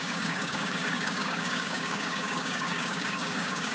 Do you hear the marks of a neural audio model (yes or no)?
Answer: yes